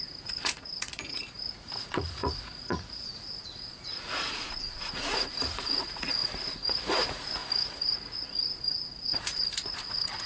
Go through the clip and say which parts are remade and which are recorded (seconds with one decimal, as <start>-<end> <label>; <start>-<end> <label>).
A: 0.0-10.3 remade